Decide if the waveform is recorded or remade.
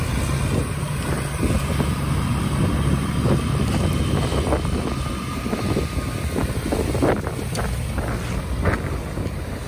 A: recorded